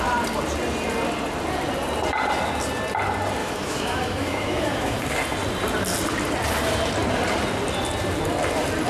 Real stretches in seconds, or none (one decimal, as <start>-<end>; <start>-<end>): 0.0-3.4; 5.0-8.9